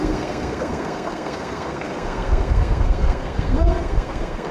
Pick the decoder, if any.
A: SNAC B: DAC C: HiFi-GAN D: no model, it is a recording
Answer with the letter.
A